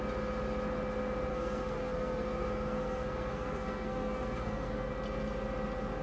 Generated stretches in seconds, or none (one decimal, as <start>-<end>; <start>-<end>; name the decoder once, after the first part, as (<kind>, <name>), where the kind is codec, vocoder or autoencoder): 1.3-4.9 (codec, SNAC)